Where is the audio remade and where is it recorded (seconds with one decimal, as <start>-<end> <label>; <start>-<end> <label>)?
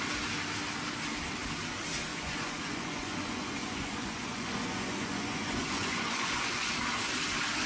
0.0-2.1 recorded; 2.1-6.7 remade; 6.7-7.7 recorded